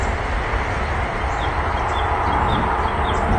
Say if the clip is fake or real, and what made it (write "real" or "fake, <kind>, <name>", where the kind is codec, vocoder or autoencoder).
real